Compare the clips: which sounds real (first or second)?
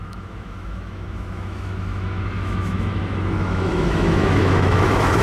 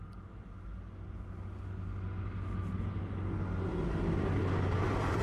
second